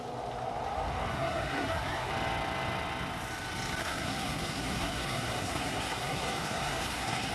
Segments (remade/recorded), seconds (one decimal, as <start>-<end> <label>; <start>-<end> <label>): 0.0-1.1 recorded; 1.1-2.1 remade; 2.1-3.8 recorded; 3.8-7.3 remade